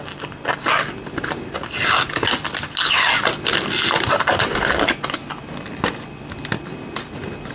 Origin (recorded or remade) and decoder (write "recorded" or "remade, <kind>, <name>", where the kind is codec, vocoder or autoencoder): recorded